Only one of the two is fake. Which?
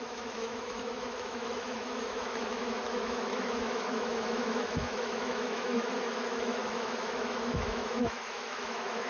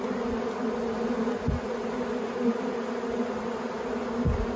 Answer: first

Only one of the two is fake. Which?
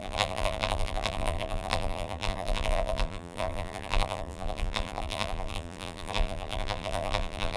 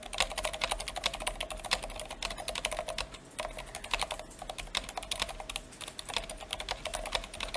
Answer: first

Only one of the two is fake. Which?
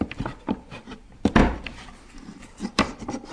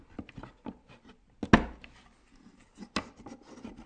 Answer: first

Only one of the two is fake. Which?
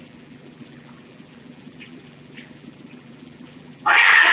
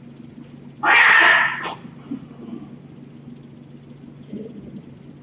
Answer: first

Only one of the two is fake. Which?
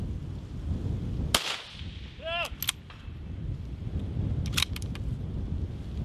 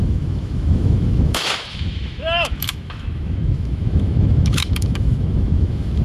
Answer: second